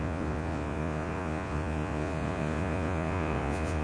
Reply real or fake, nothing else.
fake